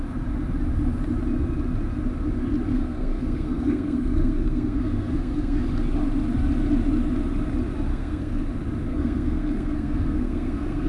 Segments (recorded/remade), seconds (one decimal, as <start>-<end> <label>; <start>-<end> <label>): 0.0-2.7 recorded; 2.7-5.6 remade; 5.6-7.9 recorded; 7.9-8.4 remade; 8.4-8.9 recorded; 8.9-10.9 remade